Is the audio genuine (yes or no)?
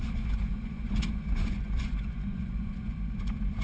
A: no